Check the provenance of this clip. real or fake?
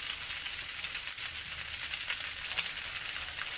real